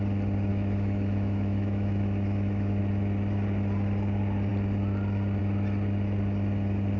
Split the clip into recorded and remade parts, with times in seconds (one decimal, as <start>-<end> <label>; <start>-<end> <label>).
0.0-0.5 recorded; 0.5-2.8 remade; 2.8-7.0 recorded